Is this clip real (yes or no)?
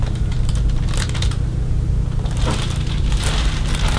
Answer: yes